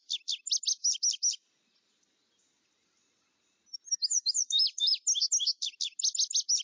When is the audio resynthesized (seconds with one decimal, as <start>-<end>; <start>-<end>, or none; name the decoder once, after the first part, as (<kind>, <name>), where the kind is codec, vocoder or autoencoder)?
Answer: 4.1-4.9 (vocoder, BigVGAN v2)